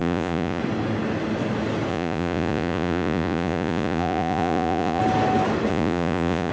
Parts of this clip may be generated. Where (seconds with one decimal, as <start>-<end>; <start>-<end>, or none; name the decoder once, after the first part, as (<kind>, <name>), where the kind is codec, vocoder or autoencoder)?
0.0-0.6 (vocoder, Vocos); 1.9-5.0; 5.7-6.5